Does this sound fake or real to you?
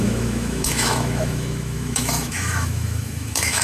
fake